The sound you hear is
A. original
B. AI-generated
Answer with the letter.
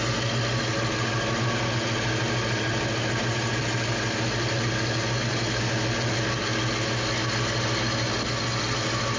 A